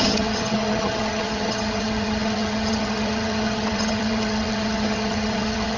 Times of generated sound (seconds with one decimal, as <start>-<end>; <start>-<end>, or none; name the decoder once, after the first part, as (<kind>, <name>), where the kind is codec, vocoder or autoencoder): 0.0-5.8 (vocoder, HiFi-GAN)